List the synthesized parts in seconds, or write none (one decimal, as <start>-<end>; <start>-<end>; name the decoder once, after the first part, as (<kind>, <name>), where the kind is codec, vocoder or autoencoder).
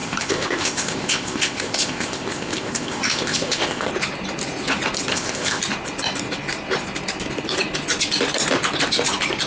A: 0.0-3.9 (codec, ZipCodec); 5.1-5.6